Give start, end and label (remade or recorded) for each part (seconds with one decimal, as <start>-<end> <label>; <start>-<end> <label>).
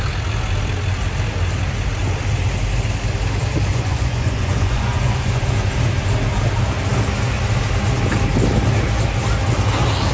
0.0-3.7 recorded; 3.7-5.4 remade; 5.4-10.1 recorded